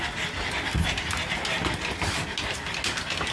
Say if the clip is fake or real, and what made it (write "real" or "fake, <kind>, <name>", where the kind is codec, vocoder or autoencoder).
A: real